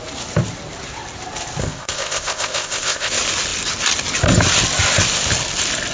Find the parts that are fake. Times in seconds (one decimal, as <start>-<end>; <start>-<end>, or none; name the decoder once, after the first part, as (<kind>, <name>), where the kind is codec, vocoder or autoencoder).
1.6-3.1 (codec, ZipCodec)